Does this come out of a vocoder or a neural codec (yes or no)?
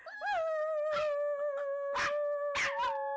no